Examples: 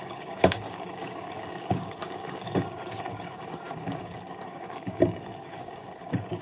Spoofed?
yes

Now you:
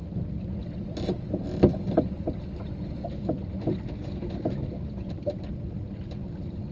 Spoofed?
no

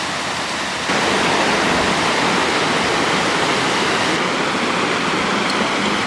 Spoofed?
no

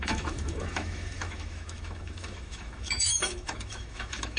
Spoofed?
yes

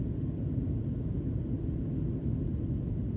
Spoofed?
no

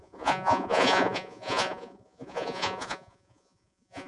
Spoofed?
yes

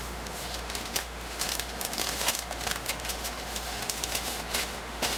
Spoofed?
yes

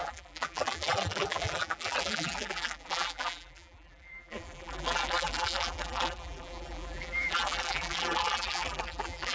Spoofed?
yes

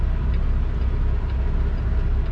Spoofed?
no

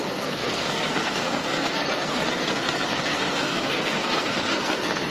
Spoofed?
yes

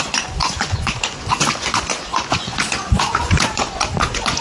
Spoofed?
yes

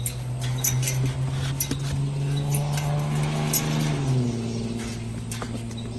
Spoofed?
no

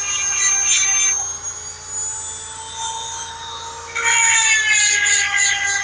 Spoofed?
no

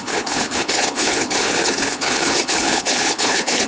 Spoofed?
yes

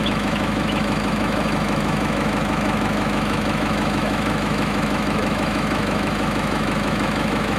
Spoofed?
yes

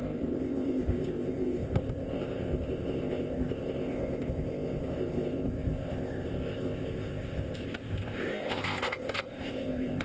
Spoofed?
yes